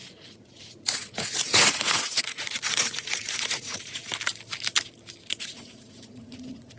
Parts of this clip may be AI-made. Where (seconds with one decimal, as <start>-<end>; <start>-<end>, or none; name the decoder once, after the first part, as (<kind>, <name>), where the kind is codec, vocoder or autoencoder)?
0.0-4.0 (vocoder, Vocos); 5.4-6.8